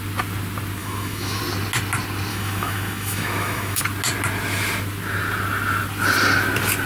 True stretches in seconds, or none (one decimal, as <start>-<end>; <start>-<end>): 0.0-0.8; 1.4-2.3; 3.8-6.9